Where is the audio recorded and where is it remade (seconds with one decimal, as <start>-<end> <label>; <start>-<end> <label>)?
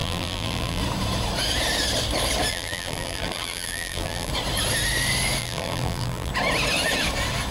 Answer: 0.0-0.8 remade; 0.8-2.5 recorded; 2.5-4.3 remade; 4.3-5.4 recorded; 5.4-6.3 remade; 6.3-7.5 recorded